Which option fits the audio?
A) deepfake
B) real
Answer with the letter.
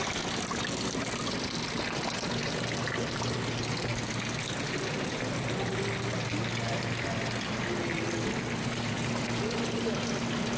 B